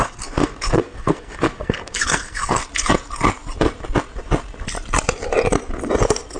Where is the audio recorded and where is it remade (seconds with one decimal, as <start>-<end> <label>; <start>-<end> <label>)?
0.0-2.6 remade; 2.6-6.4 recorded